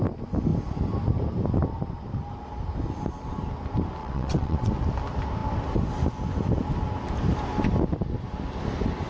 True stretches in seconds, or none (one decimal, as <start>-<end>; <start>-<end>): 0.0-4.0; 4.7-9.1